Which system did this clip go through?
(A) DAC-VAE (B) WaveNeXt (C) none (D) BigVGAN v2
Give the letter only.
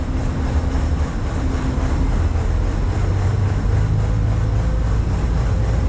C